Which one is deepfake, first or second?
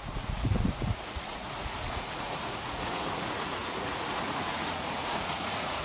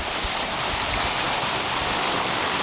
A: first